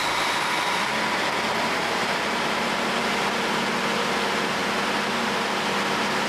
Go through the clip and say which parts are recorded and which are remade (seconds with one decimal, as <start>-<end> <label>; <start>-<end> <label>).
0.0-6.3 recorded